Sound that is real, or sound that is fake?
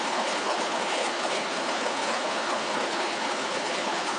fake